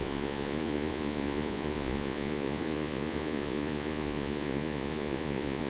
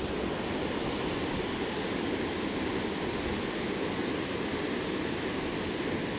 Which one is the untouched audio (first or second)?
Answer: second